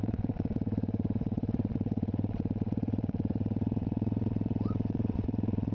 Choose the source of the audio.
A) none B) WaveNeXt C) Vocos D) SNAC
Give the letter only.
B